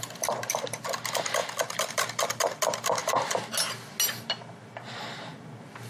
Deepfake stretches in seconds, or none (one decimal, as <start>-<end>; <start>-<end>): none